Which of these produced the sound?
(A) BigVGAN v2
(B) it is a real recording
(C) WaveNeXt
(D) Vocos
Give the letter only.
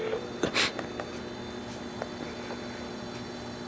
B